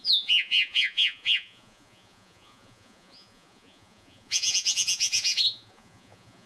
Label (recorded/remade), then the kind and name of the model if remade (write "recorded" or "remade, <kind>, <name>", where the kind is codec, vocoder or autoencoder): remade, vocoder, Vocos